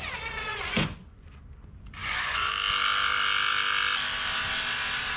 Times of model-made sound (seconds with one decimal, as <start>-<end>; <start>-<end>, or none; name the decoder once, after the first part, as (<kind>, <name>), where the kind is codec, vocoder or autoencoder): 0.5-1.3 (vocoder, Vocos); 2.0-2.5